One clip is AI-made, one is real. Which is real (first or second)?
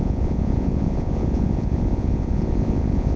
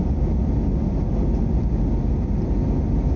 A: second